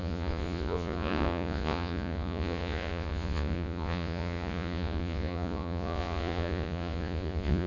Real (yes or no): no